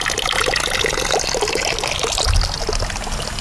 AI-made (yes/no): no